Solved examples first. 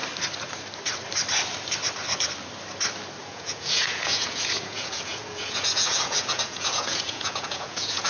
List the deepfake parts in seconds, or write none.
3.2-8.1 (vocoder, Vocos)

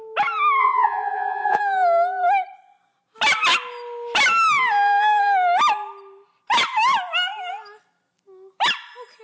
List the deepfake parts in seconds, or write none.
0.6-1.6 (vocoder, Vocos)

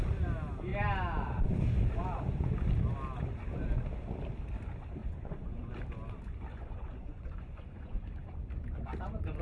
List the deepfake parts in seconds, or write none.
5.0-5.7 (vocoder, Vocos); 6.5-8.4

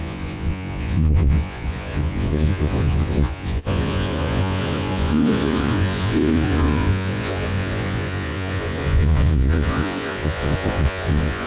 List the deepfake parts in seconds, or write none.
0.0-11.5 (vocoder, Vocos)

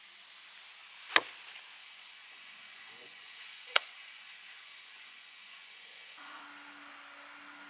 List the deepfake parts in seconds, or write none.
1.8-6.4 (vocoder, Vocos)

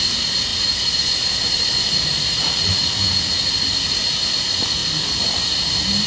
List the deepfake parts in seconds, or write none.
none

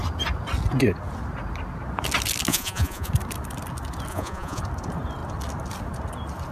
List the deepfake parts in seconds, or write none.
2.5-3.1 (vocoder, Vocos); 4.1-4.6